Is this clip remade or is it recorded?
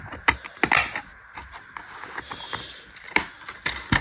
recorded